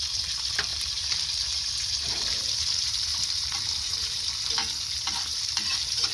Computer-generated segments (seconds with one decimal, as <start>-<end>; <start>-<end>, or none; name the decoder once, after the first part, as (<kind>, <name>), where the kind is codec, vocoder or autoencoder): 0.7-4.4 (vocoder, BigVGAN v2); 5.3-6.1